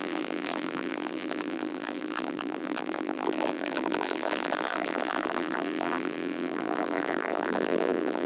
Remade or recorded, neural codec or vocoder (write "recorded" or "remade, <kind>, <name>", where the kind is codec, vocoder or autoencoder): remade, vocoder, BigVGAN v2